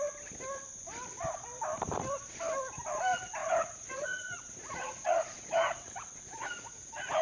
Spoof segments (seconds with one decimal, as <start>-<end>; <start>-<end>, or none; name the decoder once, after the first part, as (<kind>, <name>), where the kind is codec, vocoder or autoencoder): 3.4-7.2 (vocoder, Vocos)